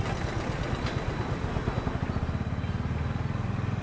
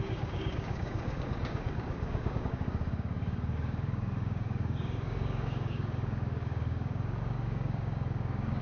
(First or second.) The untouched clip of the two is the first